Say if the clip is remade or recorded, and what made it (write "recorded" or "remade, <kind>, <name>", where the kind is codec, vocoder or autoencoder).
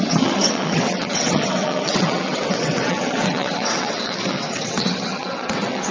remade, vocoder, WaveNeXt